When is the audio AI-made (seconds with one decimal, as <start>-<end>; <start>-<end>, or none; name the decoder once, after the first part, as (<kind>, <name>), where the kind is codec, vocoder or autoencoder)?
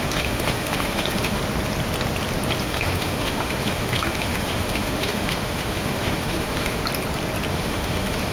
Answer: 0.0-1.4 (autoencoder, DAC-VAE); 2.6-6.8; 7.5-8.3